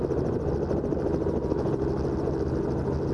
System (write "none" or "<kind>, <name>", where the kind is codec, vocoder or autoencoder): none